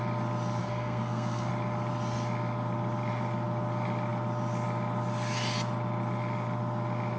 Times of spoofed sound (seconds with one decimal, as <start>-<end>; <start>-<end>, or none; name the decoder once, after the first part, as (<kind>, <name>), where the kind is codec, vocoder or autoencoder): 0.6-1.5 (codec, SNAC)